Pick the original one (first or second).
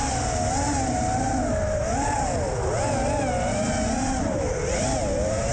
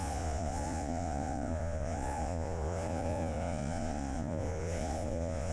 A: first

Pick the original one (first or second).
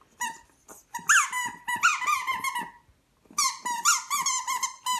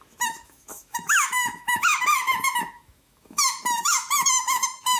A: first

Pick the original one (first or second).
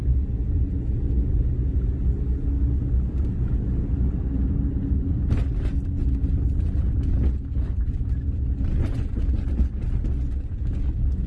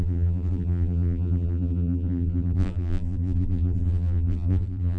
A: first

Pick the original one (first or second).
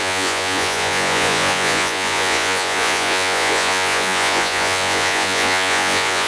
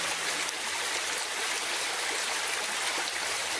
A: second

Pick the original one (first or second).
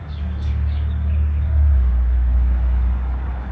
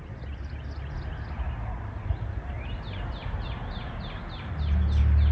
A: second